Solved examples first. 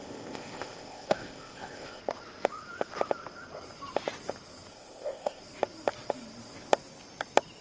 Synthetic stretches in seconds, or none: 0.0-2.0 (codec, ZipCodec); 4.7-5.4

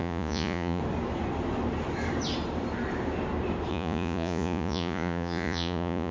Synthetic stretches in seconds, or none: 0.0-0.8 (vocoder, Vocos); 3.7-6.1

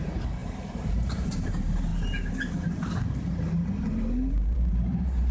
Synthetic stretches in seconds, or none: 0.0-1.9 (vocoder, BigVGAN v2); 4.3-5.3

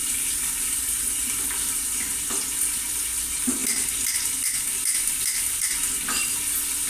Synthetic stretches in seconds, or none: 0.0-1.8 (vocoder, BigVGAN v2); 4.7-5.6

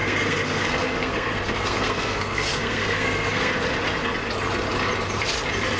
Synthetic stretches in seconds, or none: 0.0-3.5 (codec, SNAC)

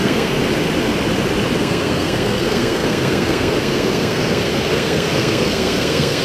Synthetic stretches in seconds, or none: 0.0-0.4 (codec, SNAC); 1.6-6.2

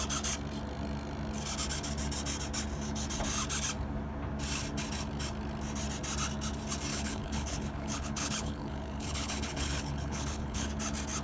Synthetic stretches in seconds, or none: 6.9-10.7 (codec, HILCodec)

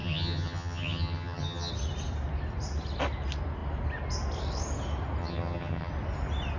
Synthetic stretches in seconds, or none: 0.0-1.7 (vocoder, HiFi-GAN); 5.2-5.9